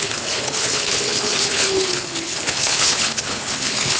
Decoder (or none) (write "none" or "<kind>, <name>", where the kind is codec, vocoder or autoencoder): codec, HILCodec